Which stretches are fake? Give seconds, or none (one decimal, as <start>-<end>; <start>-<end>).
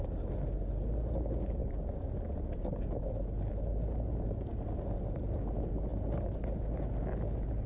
none